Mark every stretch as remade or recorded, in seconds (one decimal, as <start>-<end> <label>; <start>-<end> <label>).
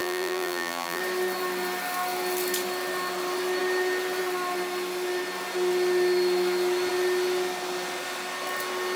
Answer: 0.0-1.0 remade; 1.0-9.0 recorded